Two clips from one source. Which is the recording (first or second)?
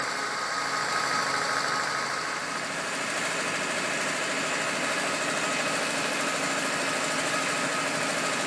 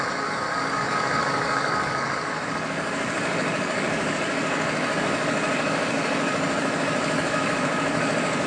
first